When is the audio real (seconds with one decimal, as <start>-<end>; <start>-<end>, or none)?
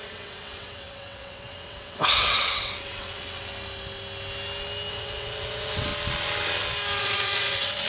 3.5-4.9; 5.9-7.0